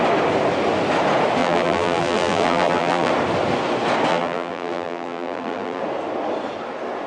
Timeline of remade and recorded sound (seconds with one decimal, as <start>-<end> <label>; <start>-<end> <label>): 0.0-1.4 recorded; 1.4-3.1 remade; 3.1-4.1 recorded; 4.1-5.8 remade; 5.8-7.1 recorded